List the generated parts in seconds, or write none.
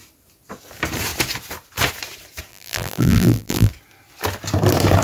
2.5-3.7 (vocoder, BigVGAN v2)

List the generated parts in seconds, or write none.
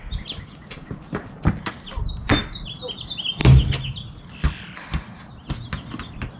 0.6-1.4 (vocoder, BigVGAN v2); 2.2-2.8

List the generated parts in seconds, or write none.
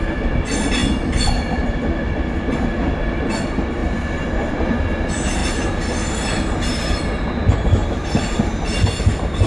7.8-9.0 (vocoder, BigVGAN v2)